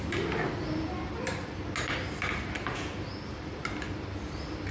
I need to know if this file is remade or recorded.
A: recorded